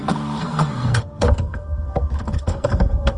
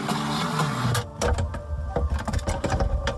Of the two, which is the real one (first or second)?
second